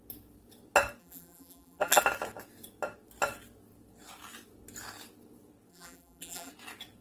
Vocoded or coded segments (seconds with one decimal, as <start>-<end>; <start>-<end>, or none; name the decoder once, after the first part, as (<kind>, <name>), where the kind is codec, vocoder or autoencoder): 1.0-2.0 (vocoder, BigVGAN v2); 5.7-6.5